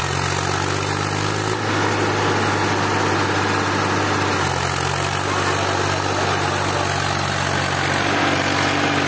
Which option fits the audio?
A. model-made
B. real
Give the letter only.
B